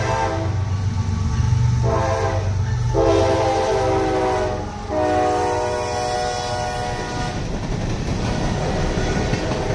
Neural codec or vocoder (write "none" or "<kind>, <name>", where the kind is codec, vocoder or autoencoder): none